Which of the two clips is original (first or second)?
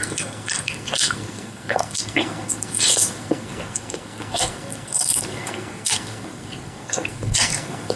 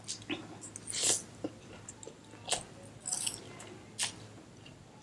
second